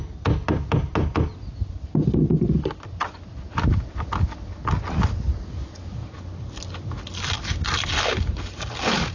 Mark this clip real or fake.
real